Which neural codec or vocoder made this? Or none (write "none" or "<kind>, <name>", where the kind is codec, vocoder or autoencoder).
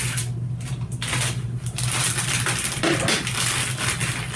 none